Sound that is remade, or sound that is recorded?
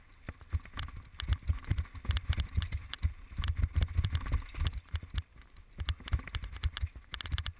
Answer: recorded